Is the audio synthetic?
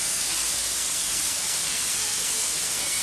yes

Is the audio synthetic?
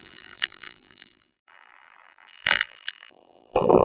yes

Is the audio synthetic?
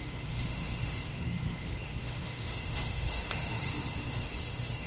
yes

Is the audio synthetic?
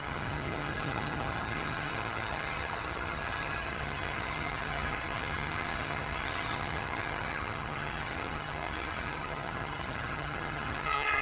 yes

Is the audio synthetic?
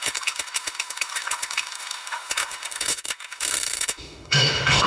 yes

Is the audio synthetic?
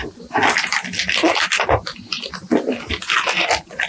no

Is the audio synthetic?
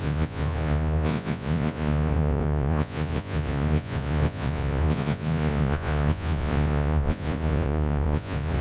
yes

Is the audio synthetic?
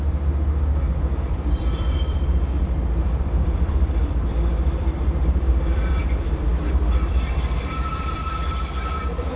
yes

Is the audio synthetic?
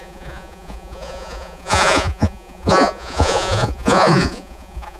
yes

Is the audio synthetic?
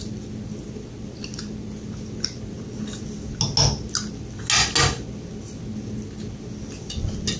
no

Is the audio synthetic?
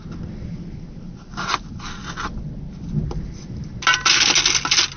no